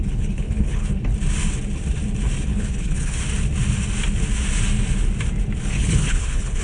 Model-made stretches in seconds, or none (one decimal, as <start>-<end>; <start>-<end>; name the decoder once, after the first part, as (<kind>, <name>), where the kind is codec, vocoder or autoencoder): 0.0-1.1 (codec, HILCodec); 2.5-3.2; 5.7-6.6